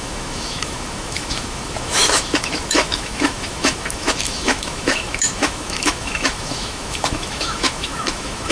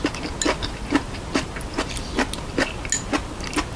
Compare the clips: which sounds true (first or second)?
second